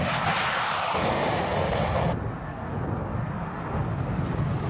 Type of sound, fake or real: real